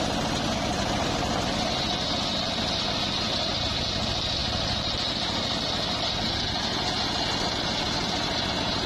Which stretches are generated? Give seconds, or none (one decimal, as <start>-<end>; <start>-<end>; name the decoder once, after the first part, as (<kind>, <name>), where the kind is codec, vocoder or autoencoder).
none